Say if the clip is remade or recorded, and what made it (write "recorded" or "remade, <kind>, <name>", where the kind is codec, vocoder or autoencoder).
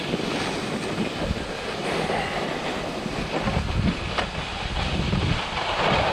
recorded